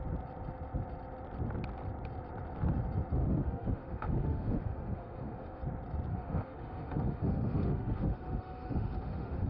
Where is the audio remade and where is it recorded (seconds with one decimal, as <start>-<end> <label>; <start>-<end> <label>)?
0.0-3.2 recorded; 3.2-5.6 remade; 5.6-6.1 recorded; 6.1-9.5 remade